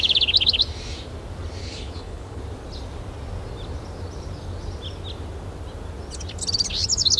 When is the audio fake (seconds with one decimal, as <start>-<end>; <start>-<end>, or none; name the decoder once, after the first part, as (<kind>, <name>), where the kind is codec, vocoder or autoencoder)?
1.6-2.4 (codec, HILCodec)